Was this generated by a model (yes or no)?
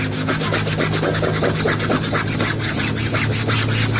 no